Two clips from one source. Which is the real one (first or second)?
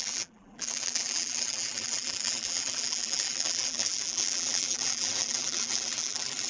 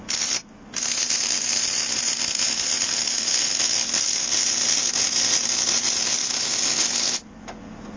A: second